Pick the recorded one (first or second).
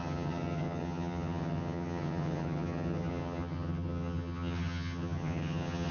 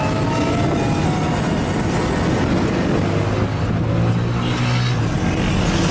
second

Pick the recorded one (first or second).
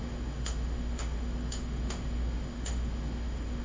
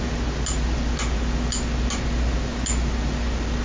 second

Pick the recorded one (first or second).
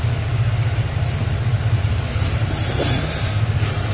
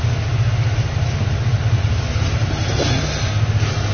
second